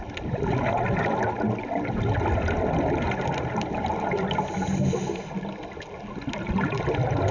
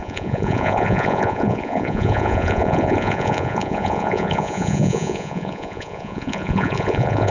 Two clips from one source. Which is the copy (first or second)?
second